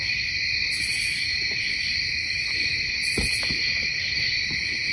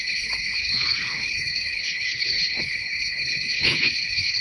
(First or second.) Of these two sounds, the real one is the first